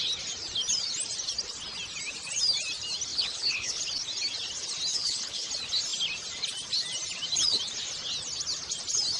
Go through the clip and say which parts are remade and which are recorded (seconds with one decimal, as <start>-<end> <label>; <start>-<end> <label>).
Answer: 0.0-3.1 recorded; 3.1-3.8 remade; 3.8-4.9 recorded; 4.9-5.5 remade; 5.5-9.2 recorded